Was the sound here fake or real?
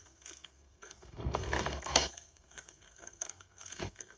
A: fake